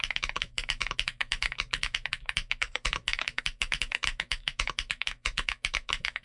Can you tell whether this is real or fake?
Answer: fake